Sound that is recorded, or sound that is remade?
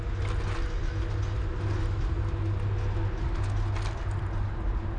recorded